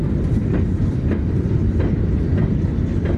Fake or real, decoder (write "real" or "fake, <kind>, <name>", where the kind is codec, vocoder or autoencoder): real